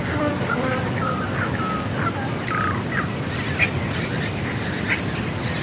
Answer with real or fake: real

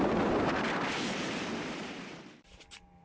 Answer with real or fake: fake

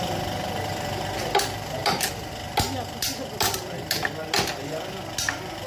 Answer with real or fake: real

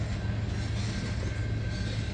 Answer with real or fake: real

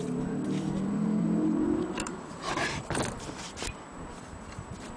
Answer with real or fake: fake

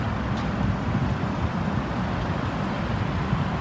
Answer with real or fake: real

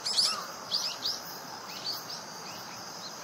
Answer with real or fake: real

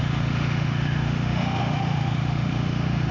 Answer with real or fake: fake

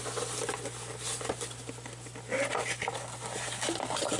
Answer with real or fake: real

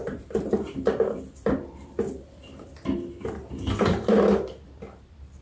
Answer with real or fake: fake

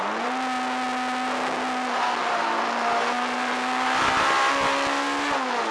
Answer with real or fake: real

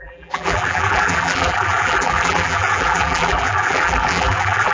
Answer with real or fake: fake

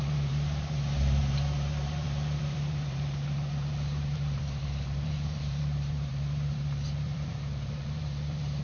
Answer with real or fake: fake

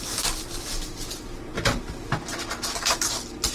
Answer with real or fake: real